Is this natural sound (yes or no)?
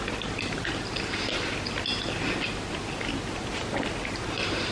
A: yes